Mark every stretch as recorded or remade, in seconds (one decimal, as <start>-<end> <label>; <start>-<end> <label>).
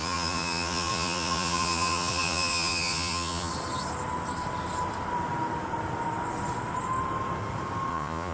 0.0-3.5 remade; 3.5-7.9 recorded; 7.9-8.3 remade